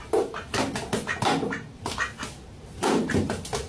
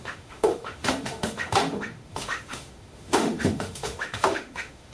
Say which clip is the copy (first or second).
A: second